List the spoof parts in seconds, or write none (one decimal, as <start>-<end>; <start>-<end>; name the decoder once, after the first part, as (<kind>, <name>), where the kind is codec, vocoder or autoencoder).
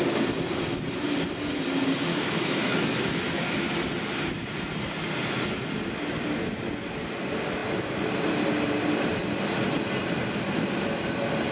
2.1-3.2 (autoencoder, DAC-VAE)